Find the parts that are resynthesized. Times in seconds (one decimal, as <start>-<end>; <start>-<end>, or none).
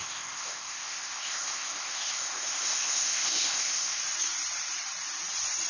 0.0-4.0